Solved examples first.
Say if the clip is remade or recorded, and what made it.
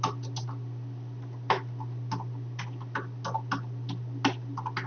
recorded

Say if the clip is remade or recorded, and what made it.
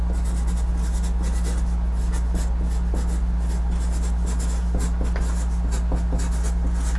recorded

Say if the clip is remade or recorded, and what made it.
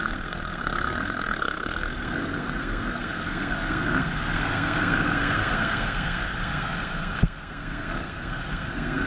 remade, codec, SNAC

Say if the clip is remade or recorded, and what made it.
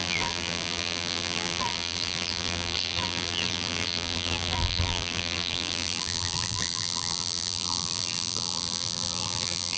remade, vocoder, BigVGAN v2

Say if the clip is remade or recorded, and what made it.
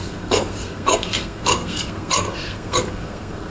remade, codec, SNAC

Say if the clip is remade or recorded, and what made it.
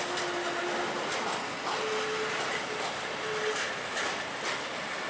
recorded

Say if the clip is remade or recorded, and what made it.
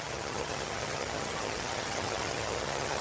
remade, vocoder, HiFi-GAN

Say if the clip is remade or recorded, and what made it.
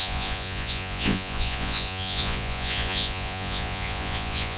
remade, vocoder, Vocos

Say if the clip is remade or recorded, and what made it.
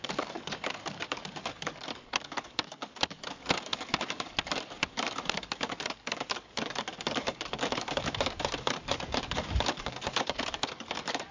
remade, codec, DAC